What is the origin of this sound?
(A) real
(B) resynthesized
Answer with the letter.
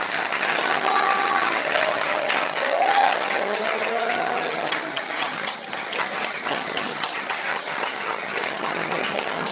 B